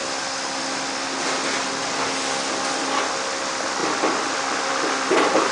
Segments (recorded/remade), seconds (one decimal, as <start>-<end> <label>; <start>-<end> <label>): 0.0-5.5 recorded